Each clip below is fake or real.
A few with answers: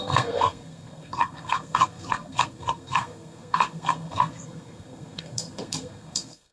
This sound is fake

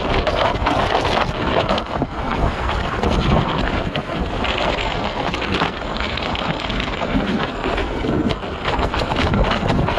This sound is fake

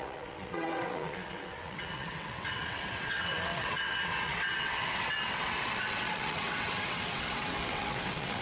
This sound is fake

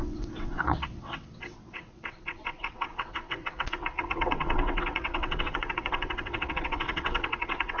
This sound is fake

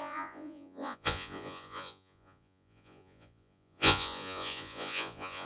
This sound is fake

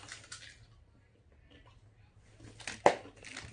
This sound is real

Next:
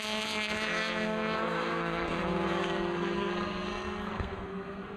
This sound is fake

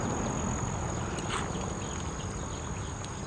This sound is real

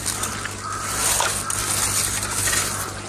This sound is real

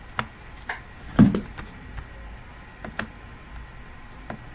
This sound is real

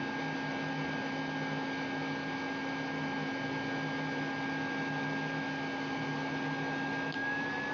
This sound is real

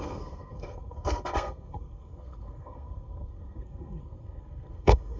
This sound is fake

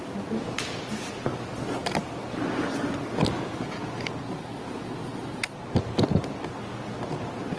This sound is real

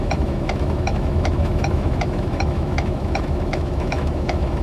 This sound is fake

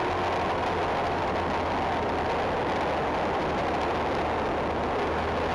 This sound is real